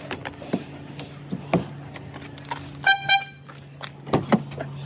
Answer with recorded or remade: recorded